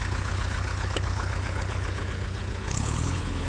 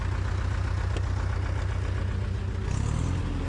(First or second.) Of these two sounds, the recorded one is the second